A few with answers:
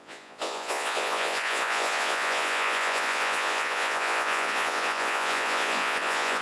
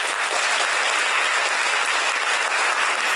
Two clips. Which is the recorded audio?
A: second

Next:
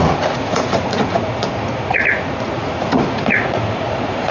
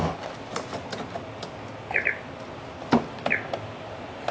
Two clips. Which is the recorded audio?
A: second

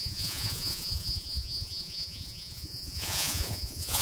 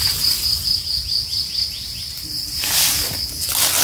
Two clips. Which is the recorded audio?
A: second